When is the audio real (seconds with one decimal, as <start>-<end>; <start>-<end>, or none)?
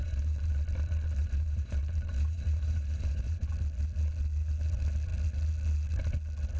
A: 0.5-1.2; 3.5-6.6